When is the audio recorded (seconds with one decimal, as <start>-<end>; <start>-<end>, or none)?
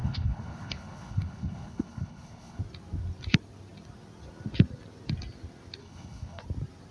2.6-5.8; 6.4-6.9